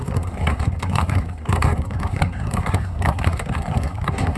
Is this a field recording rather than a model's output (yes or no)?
no